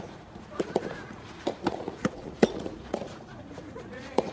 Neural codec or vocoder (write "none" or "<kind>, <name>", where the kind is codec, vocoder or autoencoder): vocoder, Vocos